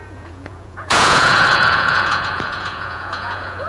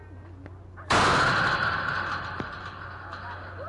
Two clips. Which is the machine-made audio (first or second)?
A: first